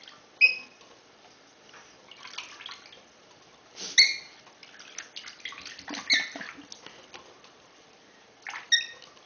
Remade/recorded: recorded